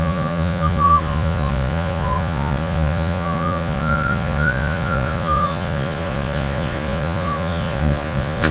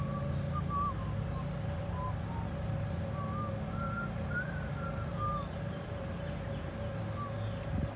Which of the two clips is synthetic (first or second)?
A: first